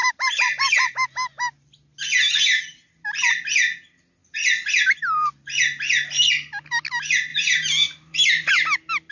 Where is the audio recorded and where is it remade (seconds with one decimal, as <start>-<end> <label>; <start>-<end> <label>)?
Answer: 0.0-0.9 remade; 0.9-4.2 recorded; 4.2-4.7 remade; 4.7-7.3 recorded; 7.3-8.5 remade; 8.5-9.1 recorded